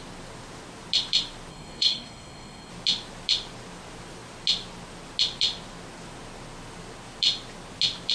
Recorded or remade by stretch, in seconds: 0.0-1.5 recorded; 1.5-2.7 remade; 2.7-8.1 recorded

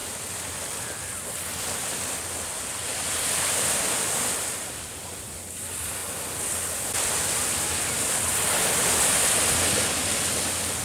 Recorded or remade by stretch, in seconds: 0.0-10.8 recorded